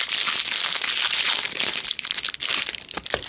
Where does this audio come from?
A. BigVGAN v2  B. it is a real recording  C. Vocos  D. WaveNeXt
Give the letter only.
A